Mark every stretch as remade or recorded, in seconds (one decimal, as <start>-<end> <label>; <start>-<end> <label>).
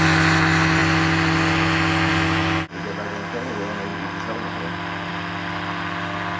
0.0-6.4 recorded